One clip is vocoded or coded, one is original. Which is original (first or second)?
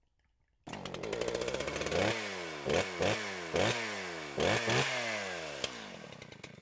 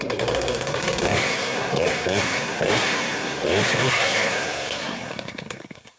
first